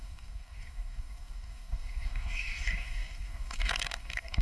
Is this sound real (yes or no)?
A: no